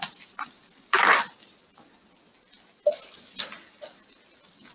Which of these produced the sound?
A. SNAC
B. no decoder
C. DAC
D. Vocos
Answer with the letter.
B